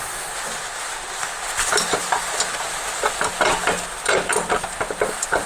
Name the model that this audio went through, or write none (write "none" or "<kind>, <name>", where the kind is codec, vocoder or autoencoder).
none